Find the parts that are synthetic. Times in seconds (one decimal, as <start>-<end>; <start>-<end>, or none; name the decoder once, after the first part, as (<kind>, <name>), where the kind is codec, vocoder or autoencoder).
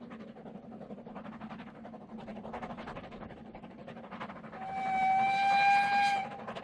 2.3-4.3 (vocoder, BigVGAN v2)